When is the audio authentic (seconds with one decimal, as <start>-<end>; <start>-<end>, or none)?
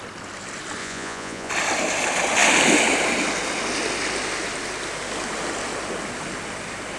0.0-0.8; 1.5-7.0